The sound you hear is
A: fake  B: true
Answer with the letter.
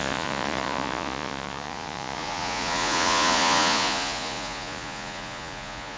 A